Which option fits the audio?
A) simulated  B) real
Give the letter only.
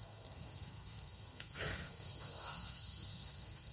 A